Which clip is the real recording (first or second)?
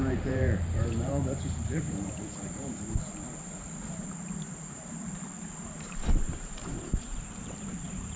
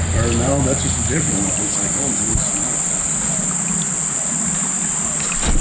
second